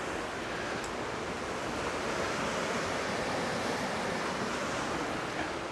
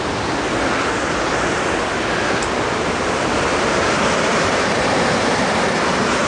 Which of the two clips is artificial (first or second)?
second